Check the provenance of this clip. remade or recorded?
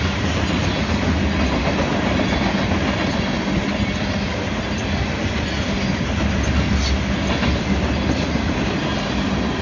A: recorded